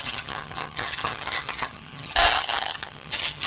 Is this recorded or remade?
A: remade